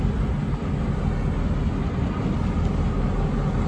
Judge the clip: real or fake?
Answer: real